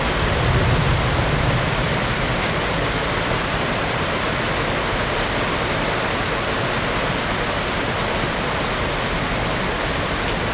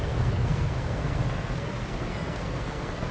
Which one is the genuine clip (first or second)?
first